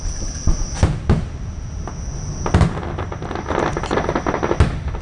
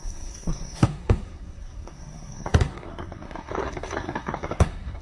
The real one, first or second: first